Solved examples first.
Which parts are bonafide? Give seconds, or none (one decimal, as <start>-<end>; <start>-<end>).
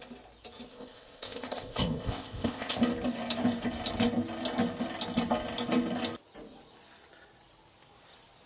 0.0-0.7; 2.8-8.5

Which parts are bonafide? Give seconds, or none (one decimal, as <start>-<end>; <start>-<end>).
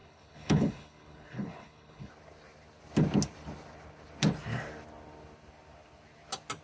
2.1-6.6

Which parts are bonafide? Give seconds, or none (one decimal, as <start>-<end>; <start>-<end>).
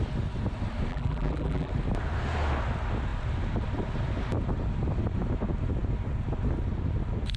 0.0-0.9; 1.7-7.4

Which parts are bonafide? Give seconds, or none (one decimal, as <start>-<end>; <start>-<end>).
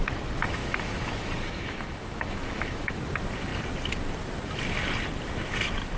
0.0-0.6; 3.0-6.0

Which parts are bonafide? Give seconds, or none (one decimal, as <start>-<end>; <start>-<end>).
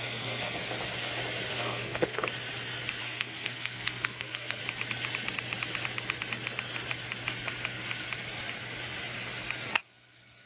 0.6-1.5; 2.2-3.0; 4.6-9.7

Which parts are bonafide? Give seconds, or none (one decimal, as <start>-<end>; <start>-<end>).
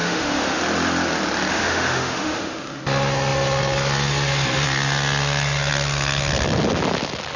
0.6-1.5; 2.8-7.4